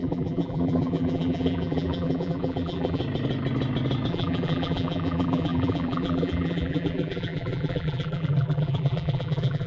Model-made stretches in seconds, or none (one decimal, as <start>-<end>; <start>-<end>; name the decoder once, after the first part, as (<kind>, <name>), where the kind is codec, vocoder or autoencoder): 0.0-3.0 (vocoder, BigVGAN v2); 4.1-9.7